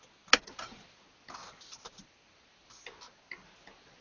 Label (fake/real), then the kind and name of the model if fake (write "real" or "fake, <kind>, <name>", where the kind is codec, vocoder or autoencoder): real